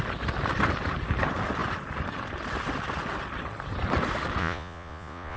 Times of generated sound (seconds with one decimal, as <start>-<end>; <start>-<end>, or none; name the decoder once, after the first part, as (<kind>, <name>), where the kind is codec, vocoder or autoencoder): 4.4-5.4 (vocoder, Vocos)